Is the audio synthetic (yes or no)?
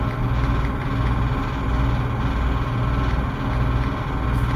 no